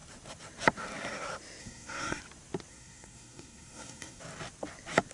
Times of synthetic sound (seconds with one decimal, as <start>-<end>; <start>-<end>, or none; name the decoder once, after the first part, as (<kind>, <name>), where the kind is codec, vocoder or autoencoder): 1.6-2.2 (codec, SNAC); 2.7-4.2